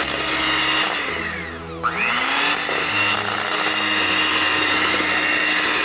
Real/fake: real